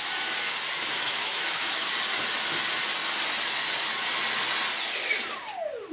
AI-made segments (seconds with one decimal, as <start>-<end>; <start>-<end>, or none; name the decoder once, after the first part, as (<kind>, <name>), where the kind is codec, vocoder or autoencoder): 1.0-1.9 (autoencoder, DAC-VAE)